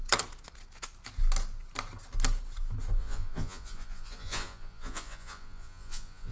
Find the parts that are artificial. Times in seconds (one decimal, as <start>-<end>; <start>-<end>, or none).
3.0-6.3